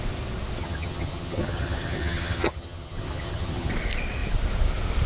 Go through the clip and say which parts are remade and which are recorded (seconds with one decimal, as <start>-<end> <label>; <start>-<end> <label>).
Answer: 0.0-0.6 recorded; 0.6-3.7 remade; 3.7-5.1 recorded